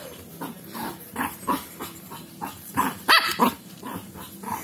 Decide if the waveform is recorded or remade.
remade